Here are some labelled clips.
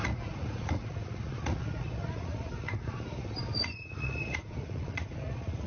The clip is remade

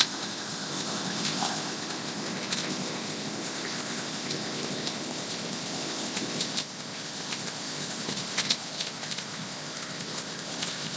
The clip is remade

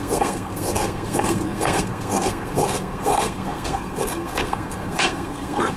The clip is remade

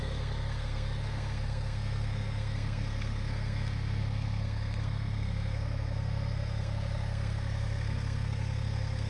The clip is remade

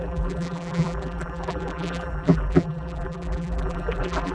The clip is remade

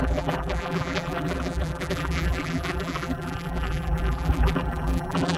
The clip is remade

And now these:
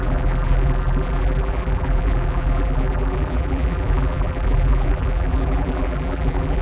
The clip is remade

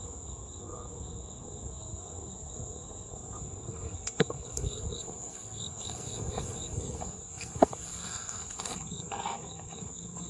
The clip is remade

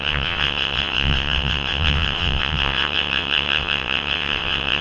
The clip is remade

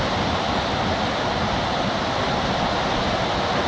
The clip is recorded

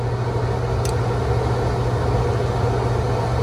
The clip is recorded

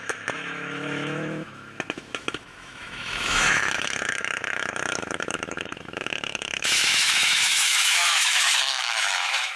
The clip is remade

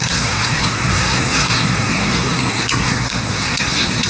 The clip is remade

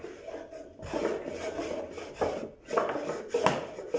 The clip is recorded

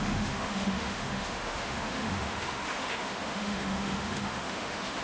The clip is remade